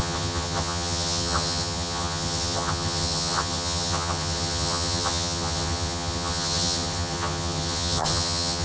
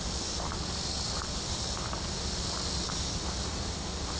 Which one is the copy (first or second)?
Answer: first